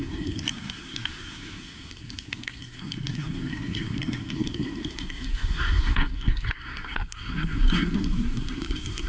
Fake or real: fake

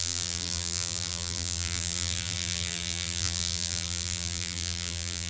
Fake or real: fake